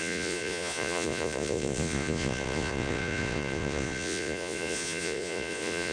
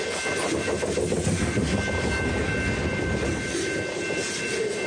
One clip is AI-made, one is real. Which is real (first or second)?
second